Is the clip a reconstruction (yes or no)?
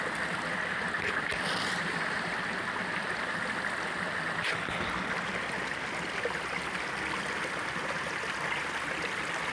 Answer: no